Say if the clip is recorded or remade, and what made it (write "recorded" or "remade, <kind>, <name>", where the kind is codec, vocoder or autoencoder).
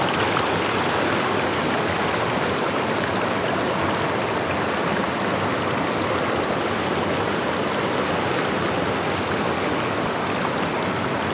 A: recorded